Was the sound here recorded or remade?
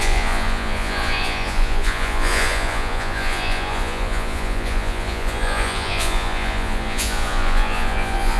remade